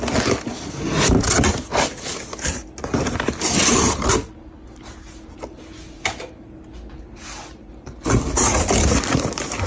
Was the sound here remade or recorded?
recorded